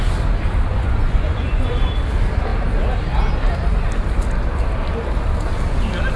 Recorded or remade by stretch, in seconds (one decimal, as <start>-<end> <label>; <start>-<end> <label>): 0.0-0.7 recorded; 0.7-1.7 remade; 1.7-6.2 recorded